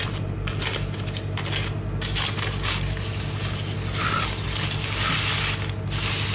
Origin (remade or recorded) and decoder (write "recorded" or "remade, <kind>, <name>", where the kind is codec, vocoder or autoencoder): recorded